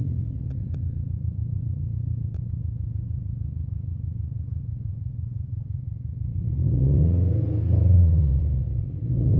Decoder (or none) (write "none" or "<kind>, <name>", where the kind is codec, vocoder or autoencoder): vocoder, Vocos